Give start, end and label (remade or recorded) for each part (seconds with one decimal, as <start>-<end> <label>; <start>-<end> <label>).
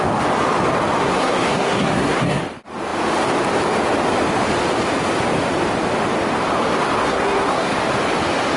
0.0-1.0 recorded; 1.0-2.4 remade; 2.4-7.0 recorded; 7.0-7.7 remade; 7.7-8.6 recorded